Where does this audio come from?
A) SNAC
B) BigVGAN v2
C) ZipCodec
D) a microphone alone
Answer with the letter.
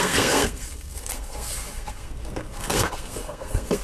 A